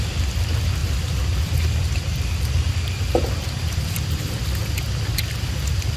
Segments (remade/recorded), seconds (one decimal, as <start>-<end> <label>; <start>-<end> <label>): 0.0-0.8 recorded; 0.8-4.4 remade; 4.4-6.0 recorded